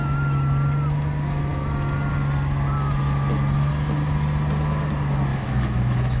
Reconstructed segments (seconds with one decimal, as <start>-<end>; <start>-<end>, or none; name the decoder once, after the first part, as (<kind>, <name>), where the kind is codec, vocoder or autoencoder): 5.3-6.2 (autoencoder, DAC-VAE)